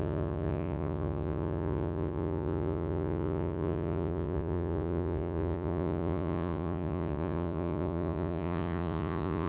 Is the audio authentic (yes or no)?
no